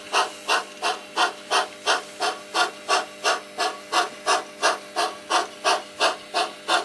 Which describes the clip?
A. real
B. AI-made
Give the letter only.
A